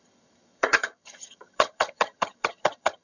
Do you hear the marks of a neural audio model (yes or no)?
yes